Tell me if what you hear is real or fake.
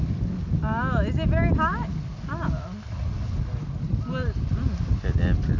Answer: real